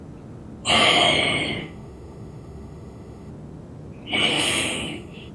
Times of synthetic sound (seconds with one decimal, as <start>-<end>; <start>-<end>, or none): 1.6-3.3; 4.3-5.3